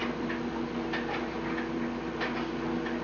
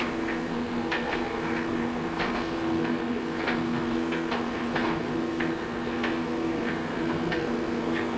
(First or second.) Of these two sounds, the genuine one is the first